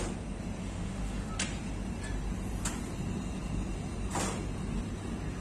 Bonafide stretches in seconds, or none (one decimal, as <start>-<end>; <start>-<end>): 0.0-0.6; 1.3-5.4